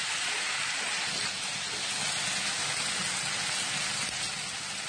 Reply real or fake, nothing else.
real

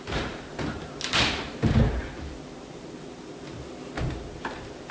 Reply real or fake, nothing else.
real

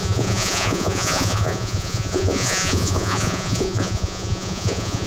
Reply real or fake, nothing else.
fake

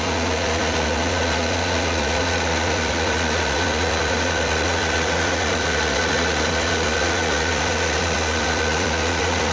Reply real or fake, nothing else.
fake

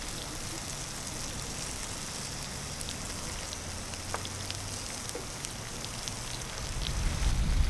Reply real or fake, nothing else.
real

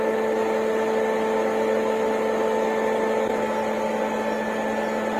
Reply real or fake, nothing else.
real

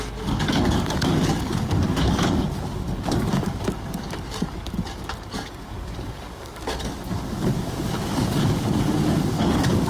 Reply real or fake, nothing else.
fake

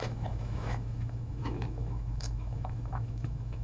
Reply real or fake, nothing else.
fake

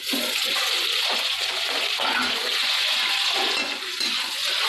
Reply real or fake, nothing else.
fake